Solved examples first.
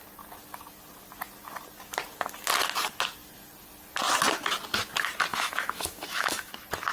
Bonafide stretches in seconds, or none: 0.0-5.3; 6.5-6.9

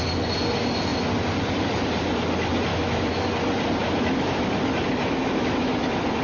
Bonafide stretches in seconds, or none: 0.0-2.7; 3.3-3.8; 4.5-5.0; 5.7-6.2